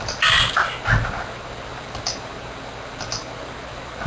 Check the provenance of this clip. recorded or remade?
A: recorded